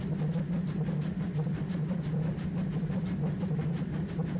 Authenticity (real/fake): real